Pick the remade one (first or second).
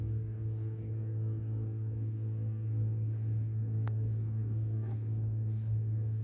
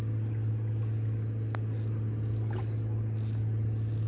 first